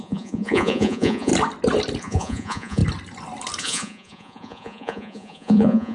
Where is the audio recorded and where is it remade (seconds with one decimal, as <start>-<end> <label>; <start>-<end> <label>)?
0.0-1.3 remade; 1.3-2.0 recorded; 2.0-2.8 remade; 2.8-3.6 recorded; 3.6-5.9 remade